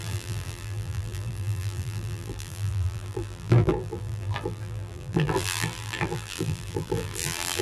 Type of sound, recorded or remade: remade